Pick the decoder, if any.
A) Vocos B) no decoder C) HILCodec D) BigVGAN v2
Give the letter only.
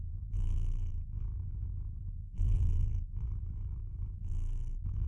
D